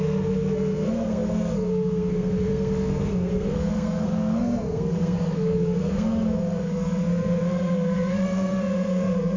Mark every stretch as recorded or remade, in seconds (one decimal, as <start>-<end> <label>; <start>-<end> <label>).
0.0-9.4 remade